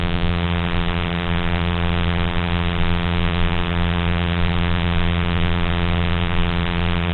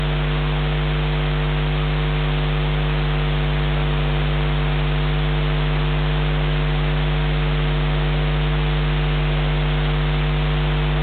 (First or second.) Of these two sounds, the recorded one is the second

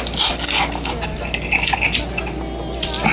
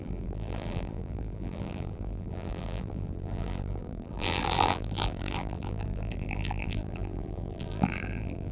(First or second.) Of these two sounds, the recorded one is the first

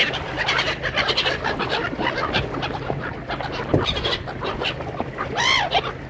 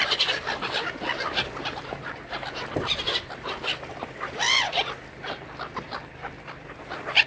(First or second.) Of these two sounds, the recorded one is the second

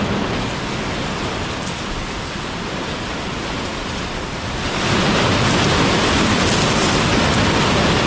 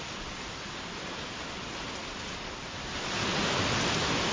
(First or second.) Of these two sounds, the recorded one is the first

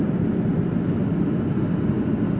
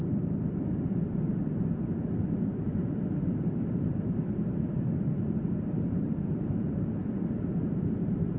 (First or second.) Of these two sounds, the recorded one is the first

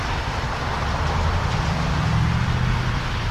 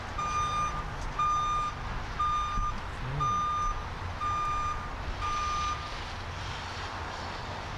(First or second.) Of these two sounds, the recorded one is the second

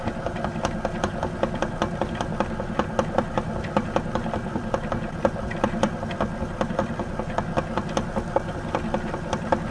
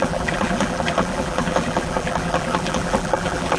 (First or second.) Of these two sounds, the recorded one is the first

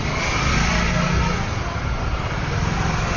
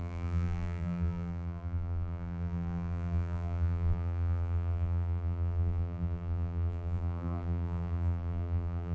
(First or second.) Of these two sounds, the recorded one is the first